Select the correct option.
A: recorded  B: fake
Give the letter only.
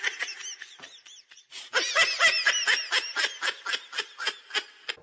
A